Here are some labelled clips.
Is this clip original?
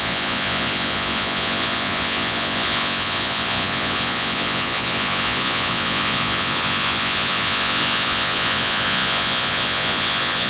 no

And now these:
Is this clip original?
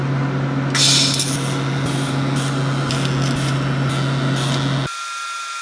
yes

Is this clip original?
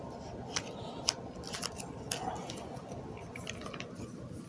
yes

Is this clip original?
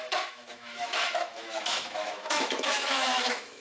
no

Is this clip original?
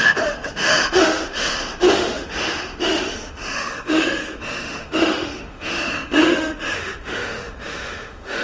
no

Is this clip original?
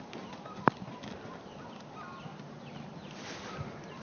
yes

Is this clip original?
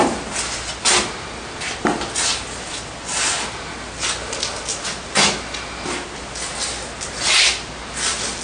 yes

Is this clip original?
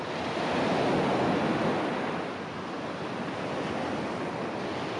yes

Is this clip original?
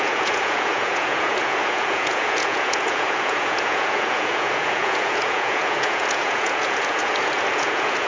no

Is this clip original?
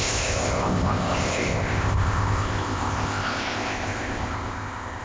no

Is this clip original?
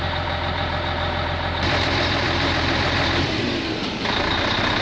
no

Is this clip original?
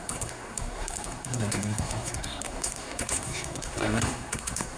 no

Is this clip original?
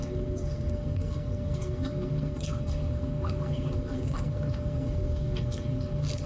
no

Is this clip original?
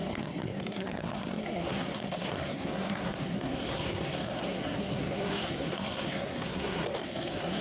no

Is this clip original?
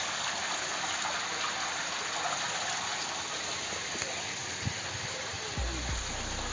yes